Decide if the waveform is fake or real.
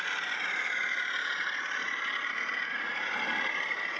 fake